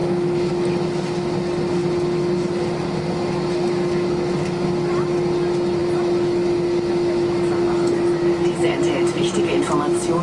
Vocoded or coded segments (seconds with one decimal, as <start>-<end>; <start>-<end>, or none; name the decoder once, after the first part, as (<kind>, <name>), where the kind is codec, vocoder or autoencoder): none